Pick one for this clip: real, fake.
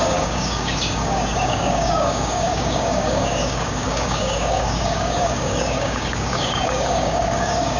fake